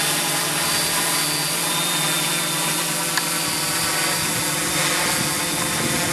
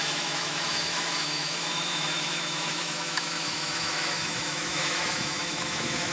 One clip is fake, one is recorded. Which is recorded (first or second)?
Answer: first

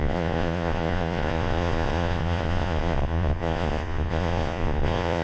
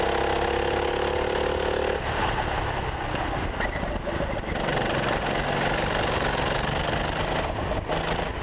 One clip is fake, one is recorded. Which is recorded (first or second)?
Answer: second